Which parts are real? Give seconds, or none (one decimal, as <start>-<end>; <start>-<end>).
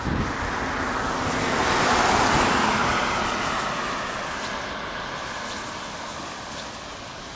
0.0-7.4